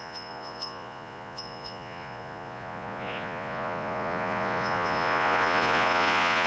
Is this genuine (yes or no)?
no